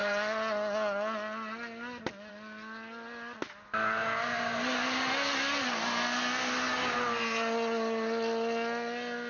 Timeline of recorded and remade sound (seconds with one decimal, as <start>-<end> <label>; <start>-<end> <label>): 0.0-9.3 recorded